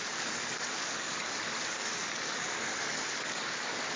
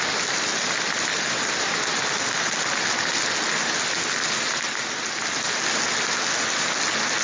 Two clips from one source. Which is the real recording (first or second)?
second